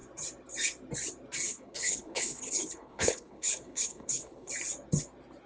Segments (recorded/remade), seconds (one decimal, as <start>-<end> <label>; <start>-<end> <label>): 0.0-1.5 recorded; 1.5-4.5 remade; 4.5-5.5 recorded